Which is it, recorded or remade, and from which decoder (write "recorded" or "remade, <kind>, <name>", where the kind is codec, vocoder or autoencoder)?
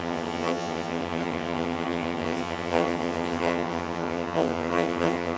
remade, vocoder, HiFi-GAN